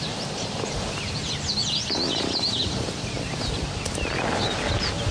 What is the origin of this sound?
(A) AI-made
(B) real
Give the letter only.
B